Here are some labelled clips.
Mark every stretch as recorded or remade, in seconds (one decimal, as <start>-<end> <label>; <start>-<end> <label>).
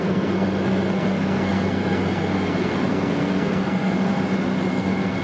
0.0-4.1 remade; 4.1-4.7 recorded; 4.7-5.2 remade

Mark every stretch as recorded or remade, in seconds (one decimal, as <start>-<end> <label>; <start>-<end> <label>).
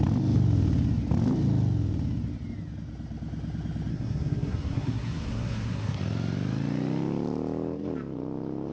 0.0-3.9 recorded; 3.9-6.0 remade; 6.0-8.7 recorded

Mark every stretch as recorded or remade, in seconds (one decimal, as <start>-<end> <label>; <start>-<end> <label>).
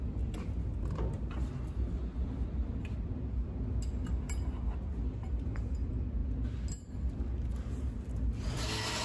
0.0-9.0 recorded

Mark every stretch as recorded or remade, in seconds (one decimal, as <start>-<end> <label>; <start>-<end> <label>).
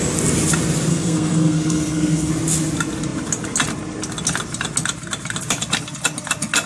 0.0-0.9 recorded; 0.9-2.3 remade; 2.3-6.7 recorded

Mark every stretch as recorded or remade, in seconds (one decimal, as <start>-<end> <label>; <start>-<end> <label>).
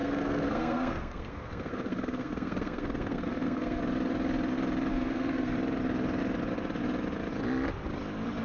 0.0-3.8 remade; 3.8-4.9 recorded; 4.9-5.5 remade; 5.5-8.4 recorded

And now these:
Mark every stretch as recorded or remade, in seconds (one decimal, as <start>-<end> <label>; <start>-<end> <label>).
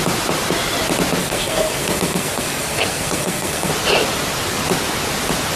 0.0-1.2 recorded; 1.2-3.7 remade; 3.7-5.6 recorded